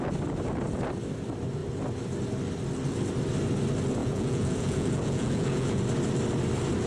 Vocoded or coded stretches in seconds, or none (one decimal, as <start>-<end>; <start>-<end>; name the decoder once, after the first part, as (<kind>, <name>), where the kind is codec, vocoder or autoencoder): 4.0-5.8 (vocoder, Vocos)